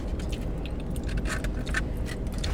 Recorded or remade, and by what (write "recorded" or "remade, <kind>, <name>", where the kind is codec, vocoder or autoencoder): recorded